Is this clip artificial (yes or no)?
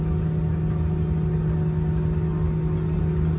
no